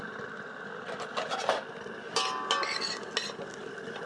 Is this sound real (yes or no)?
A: yes